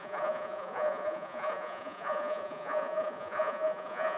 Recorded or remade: remade